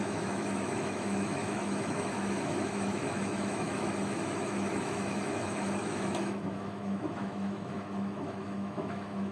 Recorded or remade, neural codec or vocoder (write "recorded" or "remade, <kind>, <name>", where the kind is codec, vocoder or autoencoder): remade, autoencoder, DAC-VAE